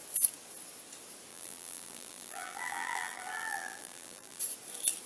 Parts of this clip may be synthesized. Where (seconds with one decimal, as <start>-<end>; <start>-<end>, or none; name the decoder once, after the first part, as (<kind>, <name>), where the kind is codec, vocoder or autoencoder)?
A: 1.3-4.4 (vocoder, BigVGAN v2)